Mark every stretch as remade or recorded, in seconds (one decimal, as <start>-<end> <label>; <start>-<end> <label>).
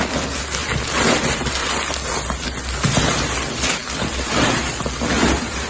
0.0-5.7 recorded